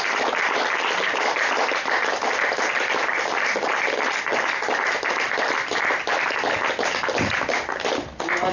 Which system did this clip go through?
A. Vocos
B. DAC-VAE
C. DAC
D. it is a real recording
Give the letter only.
D